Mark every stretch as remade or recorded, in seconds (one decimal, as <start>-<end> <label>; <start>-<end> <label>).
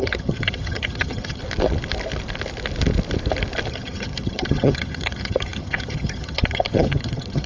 0.0-1.4 remade; 1.4-3.7 recorded; 3.7-7.5 remade